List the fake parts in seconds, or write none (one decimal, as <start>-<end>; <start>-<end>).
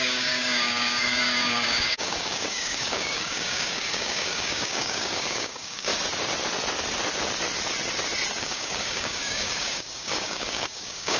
0.0-5.9; 8.4-11.2